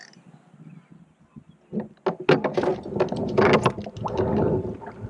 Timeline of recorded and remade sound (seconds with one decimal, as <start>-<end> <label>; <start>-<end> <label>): 0.0-5.1 recorded